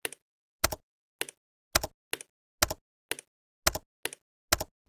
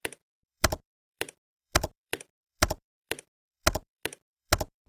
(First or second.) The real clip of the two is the first